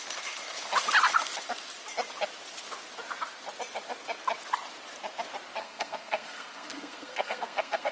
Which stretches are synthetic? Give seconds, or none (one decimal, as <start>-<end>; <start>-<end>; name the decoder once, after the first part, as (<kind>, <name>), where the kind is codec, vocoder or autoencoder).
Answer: 5.6-7.9 (codec, SNAC)